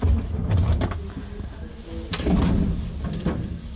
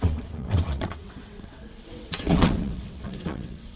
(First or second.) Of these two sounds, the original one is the first